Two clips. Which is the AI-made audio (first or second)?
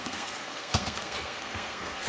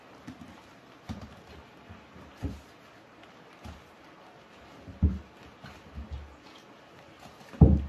first